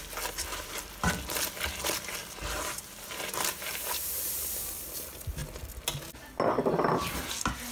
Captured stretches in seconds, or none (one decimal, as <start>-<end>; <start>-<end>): 0.0-0.5; 1.1-2.2; 4.6-7.7